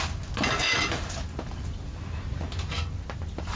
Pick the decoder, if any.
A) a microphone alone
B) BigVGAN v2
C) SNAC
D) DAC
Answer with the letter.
A